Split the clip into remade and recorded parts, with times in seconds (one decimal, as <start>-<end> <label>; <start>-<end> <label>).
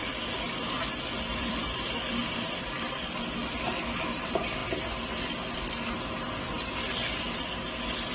0.0-1.6 remade; 1.6-2.3 recorded; 2.3-4.6 remade; 4.6-7.4 recorded; 7.4-8.1 remade